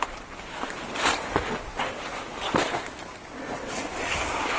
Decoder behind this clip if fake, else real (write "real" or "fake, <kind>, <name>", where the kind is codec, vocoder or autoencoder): real